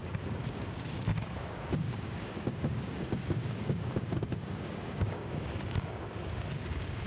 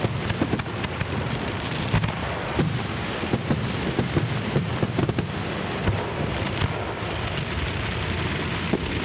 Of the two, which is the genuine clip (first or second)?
second